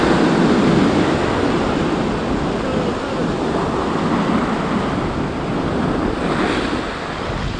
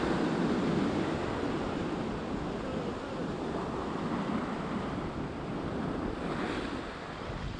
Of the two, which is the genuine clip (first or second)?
first